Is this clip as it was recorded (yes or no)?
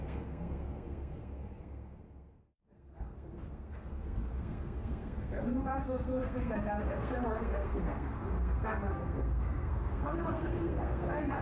no